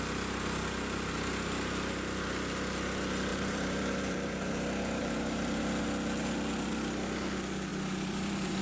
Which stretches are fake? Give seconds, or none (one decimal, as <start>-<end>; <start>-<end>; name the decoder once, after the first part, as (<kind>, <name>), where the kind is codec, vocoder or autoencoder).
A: 3.3-4.5 (vocoder, BigVGAN v2); 5.0-5.6; 7.7-8.6